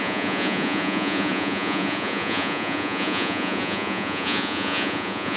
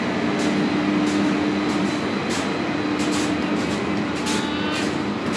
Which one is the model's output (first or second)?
first